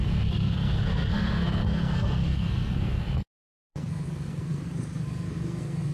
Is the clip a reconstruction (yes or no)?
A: yes